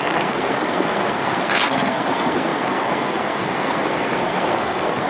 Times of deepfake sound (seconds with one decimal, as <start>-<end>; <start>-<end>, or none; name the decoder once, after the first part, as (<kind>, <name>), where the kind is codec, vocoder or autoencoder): 0.0-5.1 (codec, SNAC)